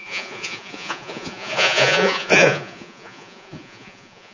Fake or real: fake